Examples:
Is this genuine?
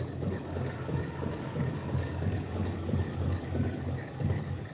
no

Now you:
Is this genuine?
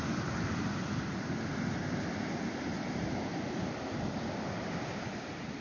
yes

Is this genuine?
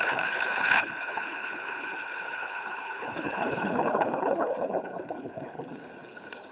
no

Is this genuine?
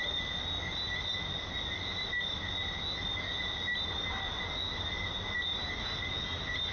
yes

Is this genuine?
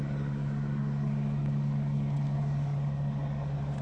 no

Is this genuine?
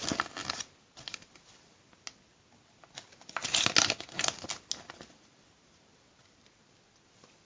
yes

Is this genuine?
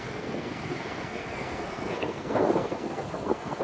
no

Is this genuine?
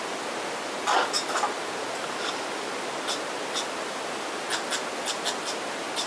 yes